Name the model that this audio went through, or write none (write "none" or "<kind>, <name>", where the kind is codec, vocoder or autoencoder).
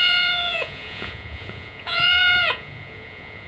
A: vocoder, Vocos